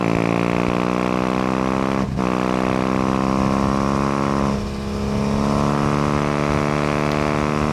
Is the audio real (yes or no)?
yes